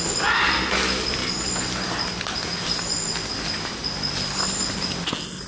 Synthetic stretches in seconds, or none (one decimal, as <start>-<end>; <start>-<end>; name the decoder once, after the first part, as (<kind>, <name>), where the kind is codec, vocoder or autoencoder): none